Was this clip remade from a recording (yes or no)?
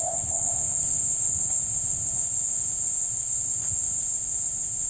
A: yes